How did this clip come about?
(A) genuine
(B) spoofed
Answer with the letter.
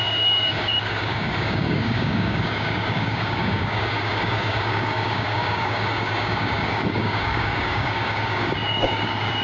B